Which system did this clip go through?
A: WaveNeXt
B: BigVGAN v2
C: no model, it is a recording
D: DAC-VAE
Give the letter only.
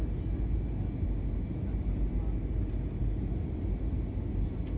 C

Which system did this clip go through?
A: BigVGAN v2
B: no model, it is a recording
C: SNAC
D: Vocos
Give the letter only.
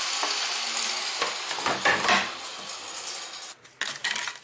B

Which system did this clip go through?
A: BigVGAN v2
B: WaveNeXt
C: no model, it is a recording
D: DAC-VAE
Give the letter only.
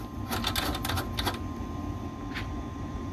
C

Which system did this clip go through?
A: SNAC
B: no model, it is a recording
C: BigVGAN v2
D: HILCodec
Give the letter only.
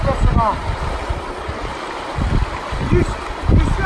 B